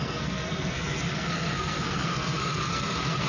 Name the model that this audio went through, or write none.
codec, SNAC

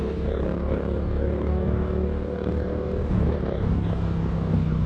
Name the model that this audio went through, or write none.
codec, DAC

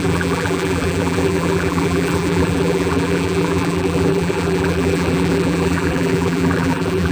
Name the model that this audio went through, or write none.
vocoder, BigVGAN v2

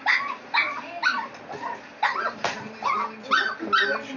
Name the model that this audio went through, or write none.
none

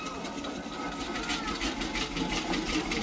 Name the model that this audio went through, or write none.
none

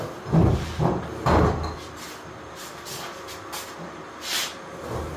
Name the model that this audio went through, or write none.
none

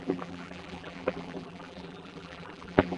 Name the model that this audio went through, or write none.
vocoder, BigVGAN v2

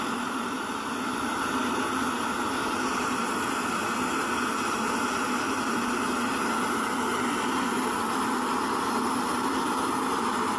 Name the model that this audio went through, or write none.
none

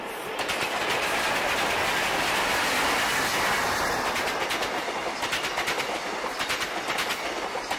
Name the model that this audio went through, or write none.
none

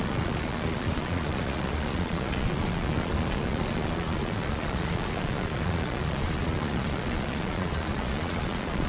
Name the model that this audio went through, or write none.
vocoder, Vocos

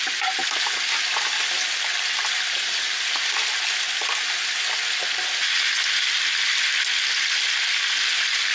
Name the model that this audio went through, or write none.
none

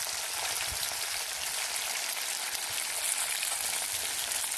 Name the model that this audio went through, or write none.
none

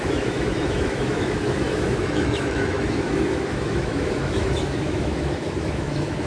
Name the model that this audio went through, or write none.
autoencoder, DAC-VAE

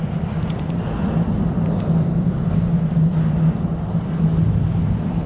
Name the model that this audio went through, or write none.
none